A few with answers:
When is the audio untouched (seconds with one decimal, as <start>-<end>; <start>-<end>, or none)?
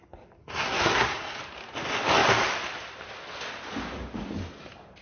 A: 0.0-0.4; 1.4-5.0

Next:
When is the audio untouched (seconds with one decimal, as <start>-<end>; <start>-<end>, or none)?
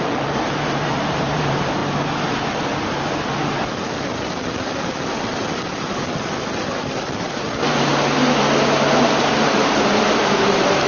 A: 1.8-6.6; 7.9-9.3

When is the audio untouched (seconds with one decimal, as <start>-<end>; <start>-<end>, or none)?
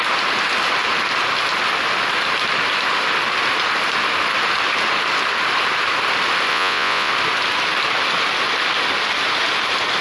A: 0.0-6.5; 7.1-10.0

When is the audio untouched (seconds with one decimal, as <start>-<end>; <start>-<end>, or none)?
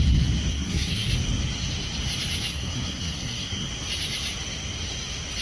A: 0.0-0.5; 1.1-2.5; 3.7-5.4